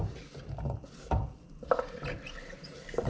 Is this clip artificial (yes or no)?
no